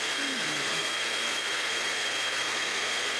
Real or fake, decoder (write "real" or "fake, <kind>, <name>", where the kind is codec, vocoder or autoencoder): fake, codec, SNAC